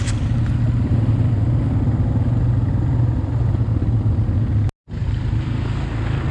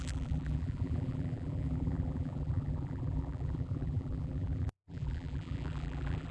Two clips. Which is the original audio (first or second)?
first